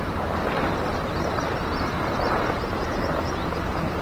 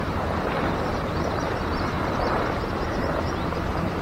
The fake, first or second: second